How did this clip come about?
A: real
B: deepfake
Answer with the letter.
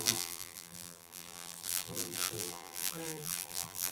B